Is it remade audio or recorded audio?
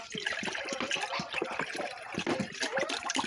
recorded